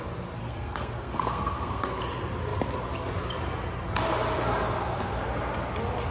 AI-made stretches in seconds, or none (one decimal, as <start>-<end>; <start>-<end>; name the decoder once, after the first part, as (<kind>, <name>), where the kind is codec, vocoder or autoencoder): 0.4-2.0 (codec, SNAC)